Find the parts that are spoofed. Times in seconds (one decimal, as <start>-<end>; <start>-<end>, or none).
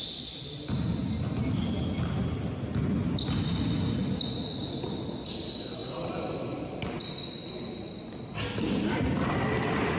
none